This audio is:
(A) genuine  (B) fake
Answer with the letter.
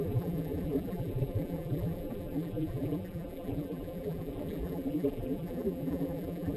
B